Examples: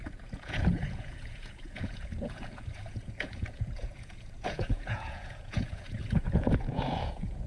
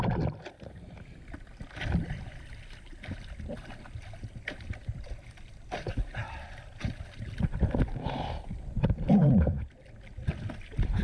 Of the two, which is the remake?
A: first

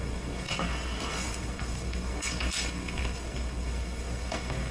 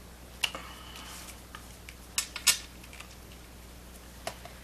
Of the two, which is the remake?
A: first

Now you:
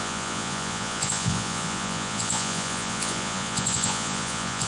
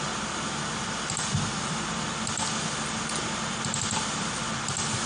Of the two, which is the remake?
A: first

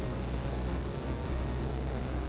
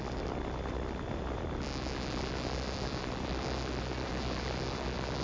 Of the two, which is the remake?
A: first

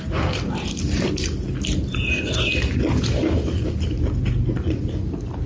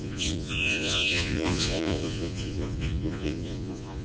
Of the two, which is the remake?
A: second